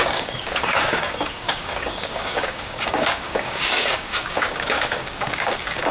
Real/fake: fake